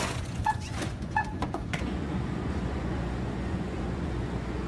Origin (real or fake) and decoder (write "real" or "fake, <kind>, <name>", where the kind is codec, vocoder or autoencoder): fake, vocoder, Vocos